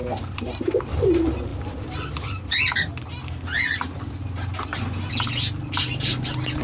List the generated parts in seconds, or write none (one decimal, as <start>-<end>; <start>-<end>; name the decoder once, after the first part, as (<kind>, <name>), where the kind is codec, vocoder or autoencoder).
0.0-0.7 (vocoder, BigVGAN v2); 1.5-5.1